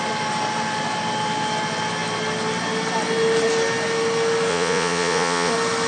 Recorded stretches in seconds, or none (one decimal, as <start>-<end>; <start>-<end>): 0.0-4.5; 5.5-5.9

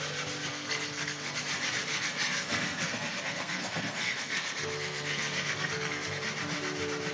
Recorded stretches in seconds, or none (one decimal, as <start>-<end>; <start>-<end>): 0.0-0.5; 1.4-1.9; 6.2-7.1